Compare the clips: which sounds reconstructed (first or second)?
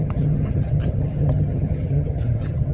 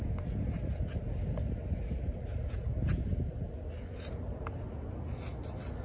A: first